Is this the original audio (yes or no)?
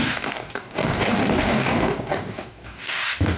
no